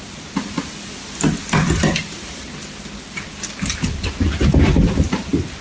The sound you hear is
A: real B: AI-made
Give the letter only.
A